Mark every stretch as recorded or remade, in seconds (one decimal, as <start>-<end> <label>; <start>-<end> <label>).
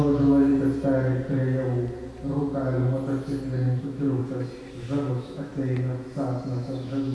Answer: 0.0-0.5 remade; 0.5-3.8 recorded; 3.8-4.2 remade; 4.2-5.1 recorded; 5.1-5.5 remade; 5.5-6.5 recorded; 6.5-7.1 remade